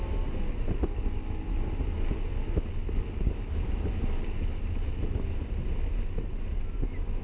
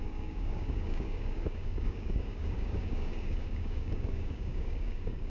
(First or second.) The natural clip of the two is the first